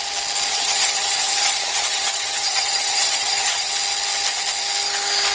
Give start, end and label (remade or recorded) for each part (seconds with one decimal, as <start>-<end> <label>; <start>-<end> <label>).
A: 0.0-0.5 recorded; 0.5-3.7 remade; 3.7-5.3 recorded